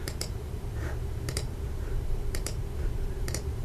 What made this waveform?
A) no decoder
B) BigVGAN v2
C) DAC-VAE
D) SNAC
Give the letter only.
B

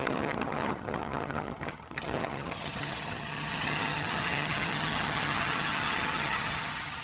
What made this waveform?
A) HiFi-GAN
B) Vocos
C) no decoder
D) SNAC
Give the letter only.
A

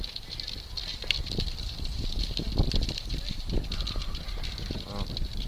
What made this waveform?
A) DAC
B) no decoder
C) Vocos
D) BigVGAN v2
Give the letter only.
B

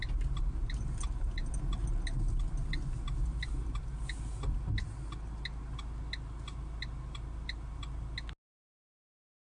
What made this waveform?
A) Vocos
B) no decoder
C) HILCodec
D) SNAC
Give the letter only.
B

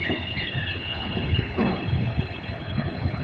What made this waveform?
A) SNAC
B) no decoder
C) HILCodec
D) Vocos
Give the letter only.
C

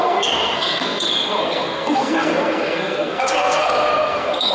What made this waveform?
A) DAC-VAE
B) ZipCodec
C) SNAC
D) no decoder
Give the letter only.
C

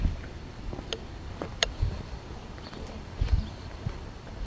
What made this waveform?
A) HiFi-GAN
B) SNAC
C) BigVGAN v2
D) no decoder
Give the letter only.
C